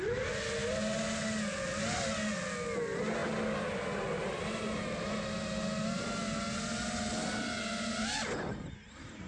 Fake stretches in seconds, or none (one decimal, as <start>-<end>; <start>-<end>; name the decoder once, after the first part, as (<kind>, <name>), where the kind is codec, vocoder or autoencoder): none

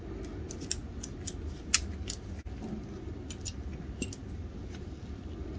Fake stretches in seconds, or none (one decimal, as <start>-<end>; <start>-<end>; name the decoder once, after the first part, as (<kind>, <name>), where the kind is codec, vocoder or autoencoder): none

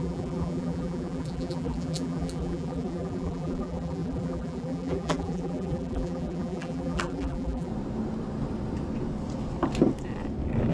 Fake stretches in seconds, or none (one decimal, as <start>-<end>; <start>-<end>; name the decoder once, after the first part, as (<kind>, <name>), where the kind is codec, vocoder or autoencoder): 0.0-7.7 (vocoder, BigVGAN v2)

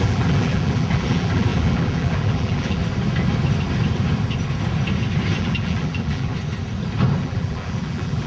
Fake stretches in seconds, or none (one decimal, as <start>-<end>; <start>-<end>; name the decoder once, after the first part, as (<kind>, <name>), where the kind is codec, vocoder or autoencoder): 0.0-2.8 (vocoder, BigVGAN v2); 5.4-6.3; 7.2-8.3

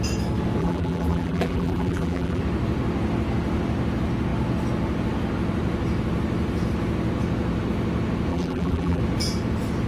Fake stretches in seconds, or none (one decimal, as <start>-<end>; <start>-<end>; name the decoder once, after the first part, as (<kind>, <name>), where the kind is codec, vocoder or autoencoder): 0.6-2.4 (vocoder, BigVGAN v2); 8.3-9.0

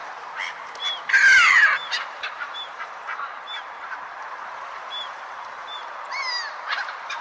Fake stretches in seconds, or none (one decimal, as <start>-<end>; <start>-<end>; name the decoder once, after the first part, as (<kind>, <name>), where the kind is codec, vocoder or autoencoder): 1.9-7.2 (vocoder, BigVGAN v2)

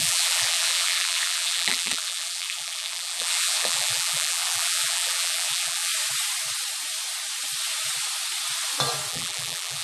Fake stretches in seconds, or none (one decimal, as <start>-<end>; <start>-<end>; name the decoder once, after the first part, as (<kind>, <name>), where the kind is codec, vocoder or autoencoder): 0.0-5.9 (vocoder, BigVGAN v2); 9.1-9.8

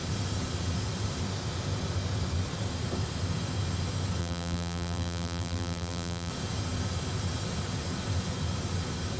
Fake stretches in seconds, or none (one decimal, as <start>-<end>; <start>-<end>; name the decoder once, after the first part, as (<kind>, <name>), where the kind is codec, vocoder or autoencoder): 4.2-6.3 (vocoder, BigVGAN v2)